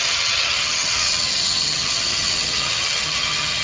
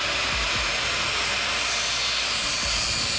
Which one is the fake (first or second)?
first